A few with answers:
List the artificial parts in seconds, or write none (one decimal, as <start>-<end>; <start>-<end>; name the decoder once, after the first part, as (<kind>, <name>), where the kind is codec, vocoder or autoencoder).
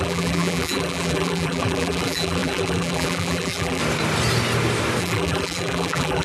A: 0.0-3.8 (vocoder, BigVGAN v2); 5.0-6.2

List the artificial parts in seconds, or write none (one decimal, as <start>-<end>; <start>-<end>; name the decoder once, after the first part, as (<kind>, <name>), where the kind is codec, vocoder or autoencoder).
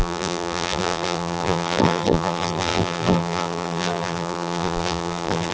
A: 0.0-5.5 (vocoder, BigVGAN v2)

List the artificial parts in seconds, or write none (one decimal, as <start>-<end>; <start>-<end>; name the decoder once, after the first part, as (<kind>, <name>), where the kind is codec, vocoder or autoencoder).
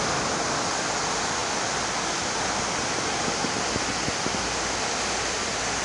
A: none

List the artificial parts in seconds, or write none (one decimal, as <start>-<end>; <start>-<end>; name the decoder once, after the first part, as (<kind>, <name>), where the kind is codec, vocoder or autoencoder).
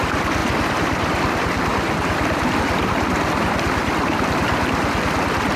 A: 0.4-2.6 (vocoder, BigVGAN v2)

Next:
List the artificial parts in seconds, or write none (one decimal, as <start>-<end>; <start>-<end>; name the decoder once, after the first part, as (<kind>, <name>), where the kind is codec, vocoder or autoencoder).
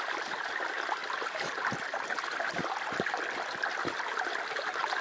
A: none